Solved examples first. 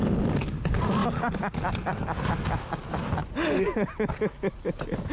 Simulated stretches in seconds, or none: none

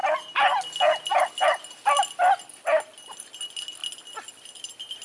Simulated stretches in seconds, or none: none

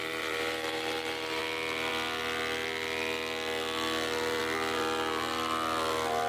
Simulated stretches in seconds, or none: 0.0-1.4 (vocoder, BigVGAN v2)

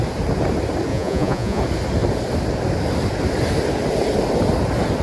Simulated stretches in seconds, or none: 0.9-1.6 (vocoder, Vocos)